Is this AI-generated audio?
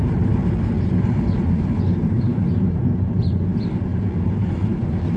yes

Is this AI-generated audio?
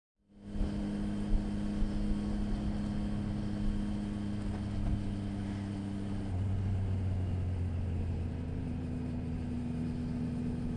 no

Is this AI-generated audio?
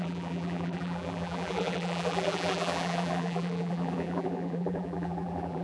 yes